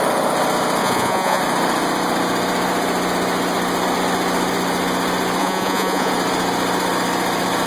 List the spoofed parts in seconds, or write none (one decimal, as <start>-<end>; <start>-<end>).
0.8-1.4; 5.4-6.1